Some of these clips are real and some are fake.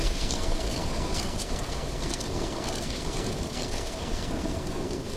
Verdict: fake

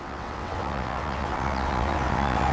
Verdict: fake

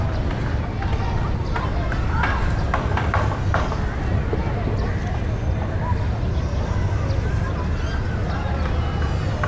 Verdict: real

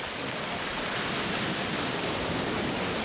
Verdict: real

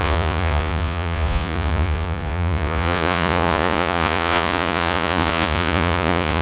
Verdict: fake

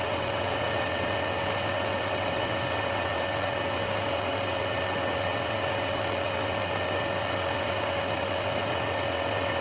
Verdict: fake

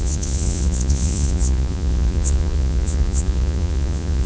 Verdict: fake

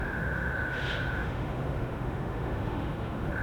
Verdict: fake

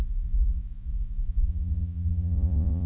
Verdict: fake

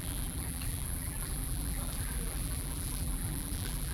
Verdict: fake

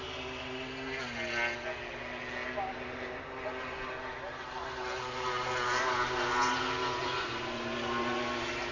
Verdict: real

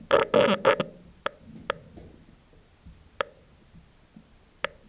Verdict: real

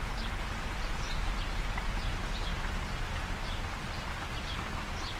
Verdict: real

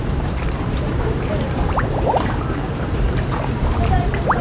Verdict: fake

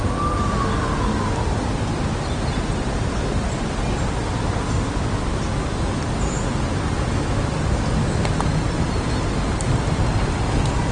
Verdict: real